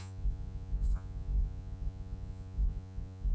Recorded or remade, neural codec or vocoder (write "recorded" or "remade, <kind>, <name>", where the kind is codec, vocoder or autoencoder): remade, vocoder, Vocos